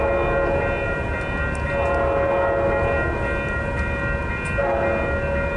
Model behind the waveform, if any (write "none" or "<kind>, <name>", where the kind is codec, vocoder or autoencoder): none